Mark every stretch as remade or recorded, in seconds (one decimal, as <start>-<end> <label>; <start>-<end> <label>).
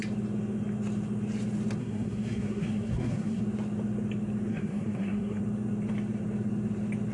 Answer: 0.0-1.8 recorded; 1.8-3.4 remade; 3.4-4.5 recorded; 4.5-5.4 remade; 5.4-7.1 recorded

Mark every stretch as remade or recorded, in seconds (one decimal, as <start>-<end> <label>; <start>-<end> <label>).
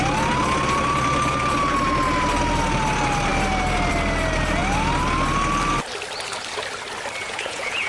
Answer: 0.0-7.2 recorded; 7.2-7.9 remade